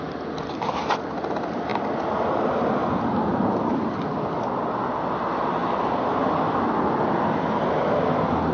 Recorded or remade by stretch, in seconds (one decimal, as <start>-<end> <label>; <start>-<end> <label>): 0.0-8.5 recorded